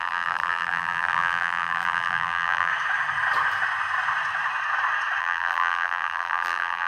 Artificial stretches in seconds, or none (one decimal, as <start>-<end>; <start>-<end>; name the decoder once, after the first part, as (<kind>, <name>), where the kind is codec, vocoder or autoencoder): 0.0-2.7 (vocoder, BigVGAN v2); 5.2-6.9